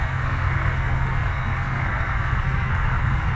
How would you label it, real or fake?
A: fake